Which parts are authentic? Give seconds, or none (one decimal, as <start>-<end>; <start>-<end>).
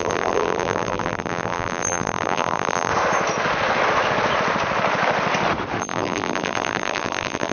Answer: 2.9-5.8